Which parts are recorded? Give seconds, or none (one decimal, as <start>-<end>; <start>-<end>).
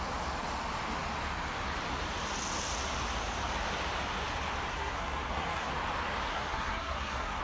0.0-4.7; 5.7-6.3